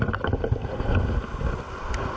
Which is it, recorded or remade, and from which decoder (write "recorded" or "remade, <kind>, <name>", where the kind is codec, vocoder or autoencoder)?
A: recorded